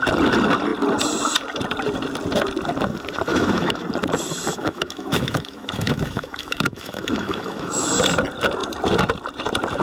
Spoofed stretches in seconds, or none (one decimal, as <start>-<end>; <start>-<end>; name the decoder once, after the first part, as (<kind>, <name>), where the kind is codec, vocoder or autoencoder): 3.3-3.8 (autoencoder, DAC-VAE); 4.5-7.9